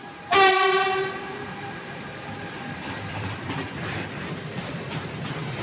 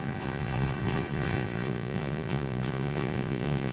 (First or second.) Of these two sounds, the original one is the first